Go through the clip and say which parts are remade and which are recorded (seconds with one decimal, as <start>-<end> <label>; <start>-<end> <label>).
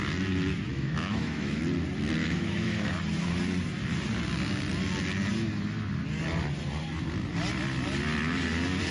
0.0-0.7 recorded; 0.7-1.6 remade; 1.6-2.2 recorded; 2.2-2.9 remade; 2.9-8.9 recorded